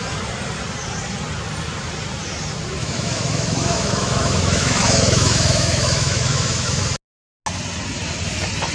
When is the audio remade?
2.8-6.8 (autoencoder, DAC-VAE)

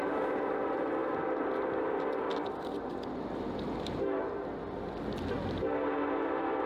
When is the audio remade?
none

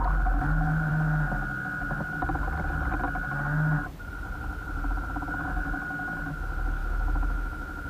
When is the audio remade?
6.8-7.9 (autoencoder, DAC-VAE)

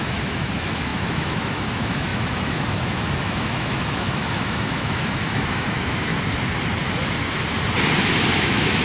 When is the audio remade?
0.0-6.1 (autoencoder, DAC-VAE); 8.4-8.8

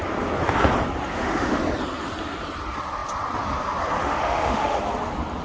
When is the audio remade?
1.1-1.6 (autoencoder, DAC-VAE); 4.0-4.8

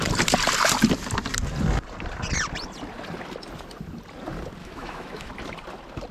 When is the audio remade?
4.6-5.3 (autoencoder, DAC-VAE)

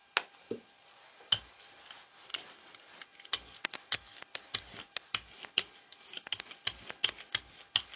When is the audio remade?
none